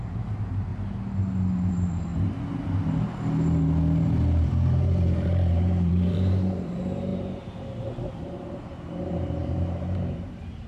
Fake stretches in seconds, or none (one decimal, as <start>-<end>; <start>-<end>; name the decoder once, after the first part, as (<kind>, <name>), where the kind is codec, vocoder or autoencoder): 0.0-0.7 (vocoder, BigVGAN v2); 1.7-2.1; 4.4-10.7